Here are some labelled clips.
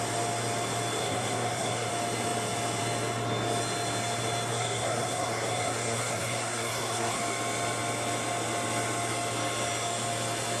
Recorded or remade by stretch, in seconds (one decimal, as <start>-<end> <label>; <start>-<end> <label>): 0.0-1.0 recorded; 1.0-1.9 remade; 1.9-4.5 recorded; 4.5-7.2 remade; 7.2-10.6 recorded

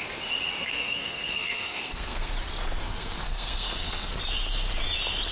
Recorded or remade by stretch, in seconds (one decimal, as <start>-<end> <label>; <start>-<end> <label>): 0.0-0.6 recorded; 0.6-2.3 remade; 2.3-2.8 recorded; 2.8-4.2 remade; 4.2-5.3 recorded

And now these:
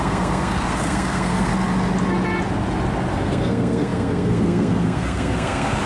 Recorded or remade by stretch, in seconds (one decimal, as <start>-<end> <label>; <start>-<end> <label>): 0.0-1.5 remade; 1.5-3.1 recorded; 3.1-5.9 remade